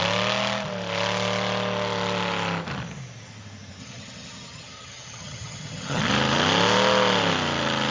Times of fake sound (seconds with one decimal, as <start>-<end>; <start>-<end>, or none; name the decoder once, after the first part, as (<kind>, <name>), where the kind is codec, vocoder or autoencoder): 3.8-6.0 (vocoder, HiFi-GAN)